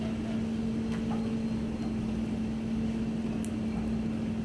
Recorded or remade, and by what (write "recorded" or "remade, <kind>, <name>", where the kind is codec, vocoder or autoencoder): recorded